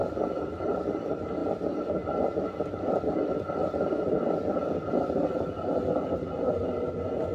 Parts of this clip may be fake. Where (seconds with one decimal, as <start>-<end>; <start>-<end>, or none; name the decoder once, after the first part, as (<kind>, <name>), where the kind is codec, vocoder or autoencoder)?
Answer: none